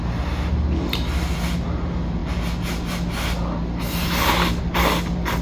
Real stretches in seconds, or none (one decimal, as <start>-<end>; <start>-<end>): 0.0-5.4